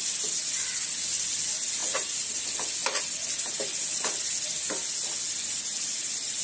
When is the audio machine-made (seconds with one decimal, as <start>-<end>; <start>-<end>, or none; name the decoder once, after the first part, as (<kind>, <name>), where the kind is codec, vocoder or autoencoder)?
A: none